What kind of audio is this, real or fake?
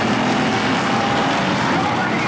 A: real